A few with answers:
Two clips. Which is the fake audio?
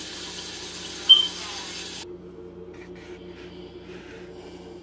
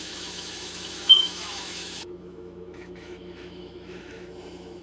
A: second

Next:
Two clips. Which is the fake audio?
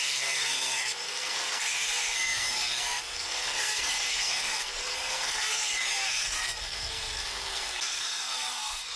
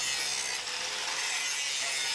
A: first